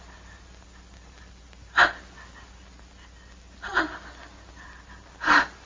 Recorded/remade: recorded